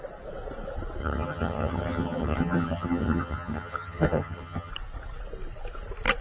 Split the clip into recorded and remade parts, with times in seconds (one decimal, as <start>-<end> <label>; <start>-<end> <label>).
0.0-1.0 recorded; 1.0-4.7 remade; 4.7-6.2 recorded